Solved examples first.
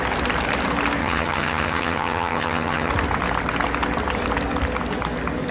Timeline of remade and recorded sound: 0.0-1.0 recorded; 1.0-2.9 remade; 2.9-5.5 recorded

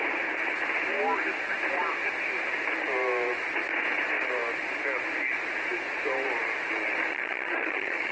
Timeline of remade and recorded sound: 0.0-7.1 recorded; 7.1-8.1 remade

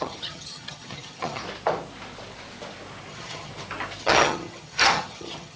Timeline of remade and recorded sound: 0.0-1.4 remade; 1.4-3.1 recorded; 3.1-3.5 remade; 3.5-4.0 recorded; 4.0-5.6 remade

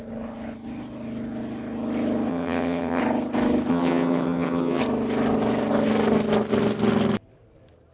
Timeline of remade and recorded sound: 0.0-2.3 recorded; 2.3-3.0 remade; 3.0-3.7 recorded; 3.7-4.8 remade; 4.8-7.9 recorded

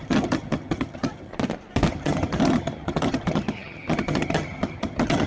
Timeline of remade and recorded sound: 0.0-1.3 remade; 1.3-1.9 recorded; 1.9-5.3 remade

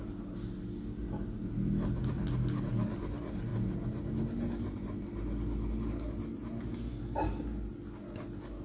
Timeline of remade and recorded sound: 0.0-8.6 recorded